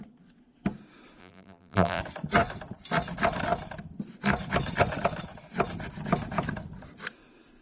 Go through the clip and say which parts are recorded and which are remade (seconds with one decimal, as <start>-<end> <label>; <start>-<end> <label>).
0.0-1.2 recorded; 1.2-2.0 remade; 2.0-7.6 recorded